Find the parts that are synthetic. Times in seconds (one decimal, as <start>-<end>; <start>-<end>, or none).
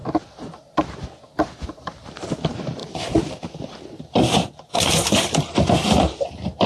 none